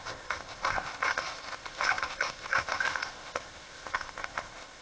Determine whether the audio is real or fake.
fake